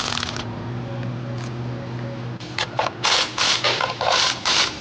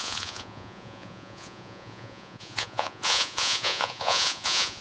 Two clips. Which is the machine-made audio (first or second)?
second